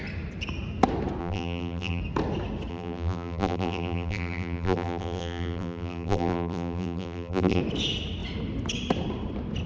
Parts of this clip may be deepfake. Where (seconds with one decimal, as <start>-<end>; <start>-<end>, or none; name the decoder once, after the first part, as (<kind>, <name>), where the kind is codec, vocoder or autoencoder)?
1.2-2.0 (vocoder, BigVGAN v2); 2.7-7.6